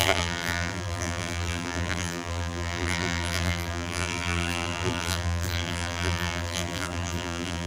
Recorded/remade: remade